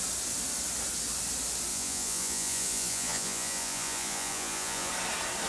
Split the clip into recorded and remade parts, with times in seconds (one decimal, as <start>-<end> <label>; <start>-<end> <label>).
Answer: 0.0-1.7 recorded; 1.7-4.9 remade; 4.9-5.5 recorded